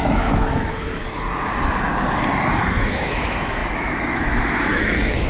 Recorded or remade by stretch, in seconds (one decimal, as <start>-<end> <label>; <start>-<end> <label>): 0.0-1.0 remade; 1.0-2.8 recorded; 2.8-5.3 remade